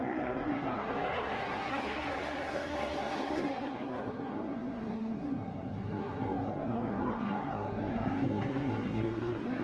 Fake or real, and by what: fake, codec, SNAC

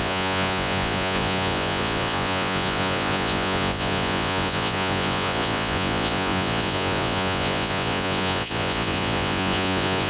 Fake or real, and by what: fake, vocoder, Vocos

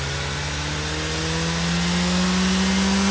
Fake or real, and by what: real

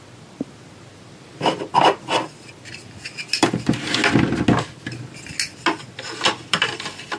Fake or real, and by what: real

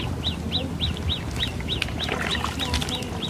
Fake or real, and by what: real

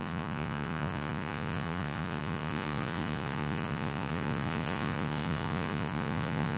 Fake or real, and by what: fake, vocoder, Vocos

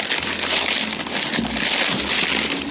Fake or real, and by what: real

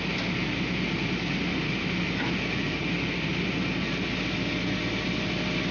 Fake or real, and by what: real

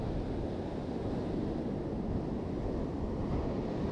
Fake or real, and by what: real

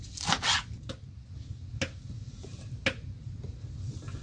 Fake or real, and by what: real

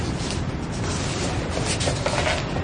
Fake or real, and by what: real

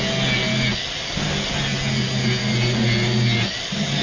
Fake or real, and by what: real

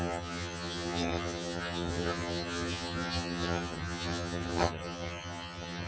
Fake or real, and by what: fake, vocoder, HiFi-GAN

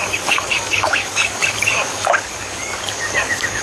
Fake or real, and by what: fake, codec, DAC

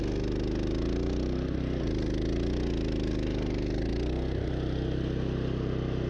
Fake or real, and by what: real